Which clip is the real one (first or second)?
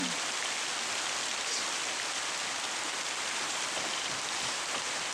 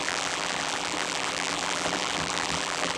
first